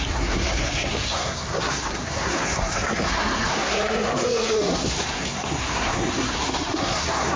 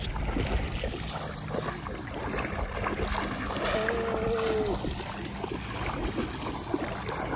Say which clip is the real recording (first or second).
second